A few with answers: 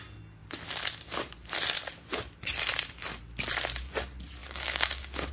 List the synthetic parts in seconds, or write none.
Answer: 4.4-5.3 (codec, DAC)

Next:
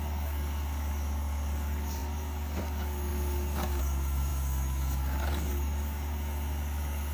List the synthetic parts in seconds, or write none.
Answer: 0.0-7.1 (codec, DAC)

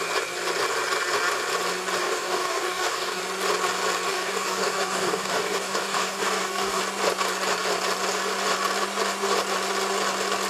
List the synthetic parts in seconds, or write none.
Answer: 2.0-3.2 (codec, DAC); 4.1-6.8

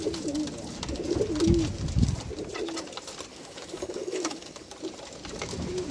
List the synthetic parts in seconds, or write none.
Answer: 3.3-4.7 (codec, DAC)